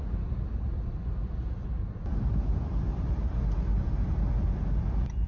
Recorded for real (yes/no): yes